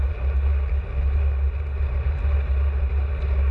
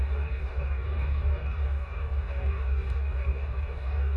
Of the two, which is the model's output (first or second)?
second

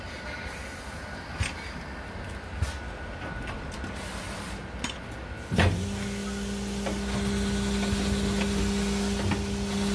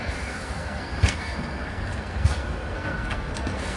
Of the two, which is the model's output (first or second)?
second